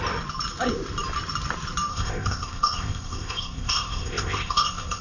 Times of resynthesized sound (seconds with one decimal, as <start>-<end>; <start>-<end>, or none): 1.9-5.0